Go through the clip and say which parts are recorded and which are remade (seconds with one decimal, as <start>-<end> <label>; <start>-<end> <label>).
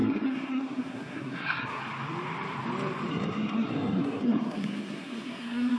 0.0-1.8 remade; 1.8-3.1 recorded; 3.1-5.8 remade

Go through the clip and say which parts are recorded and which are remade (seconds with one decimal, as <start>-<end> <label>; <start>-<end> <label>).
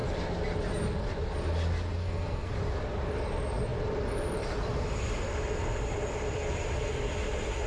0.0-2.0 recorded; 2.0-2.5 remade; 2.5-7.7 recorded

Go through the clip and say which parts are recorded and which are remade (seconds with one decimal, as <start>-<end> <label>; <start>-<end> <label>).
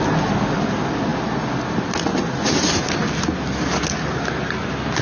0.0-5.0 recorded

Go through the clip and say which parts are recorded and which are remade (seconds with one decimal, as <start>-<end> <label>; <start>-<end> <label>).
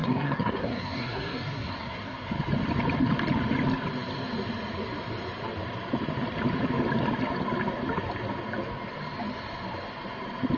0.0-2.3 remade; 2.3-10.6 recorded